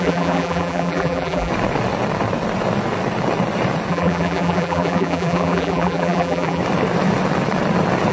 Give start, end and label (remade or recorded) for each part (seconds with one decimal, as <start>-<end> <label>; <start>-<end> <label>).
0.0-1.5 remade; 1.5-3.9 recorded; 3.9-6.6 remade; 6.6-8.1 recorded